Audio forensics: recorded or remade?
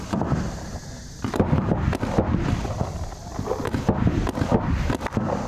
recorded